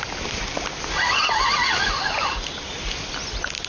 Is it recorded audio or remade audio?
recorded